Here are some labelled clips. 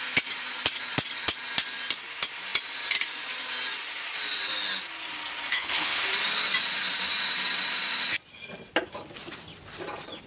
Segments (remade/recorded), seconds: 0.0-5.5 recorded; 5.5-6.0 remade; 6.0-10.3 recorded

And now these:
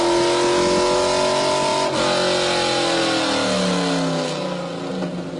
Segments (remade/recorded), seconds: 0.0-5.4 recorded